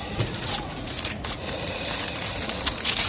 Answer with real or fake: fake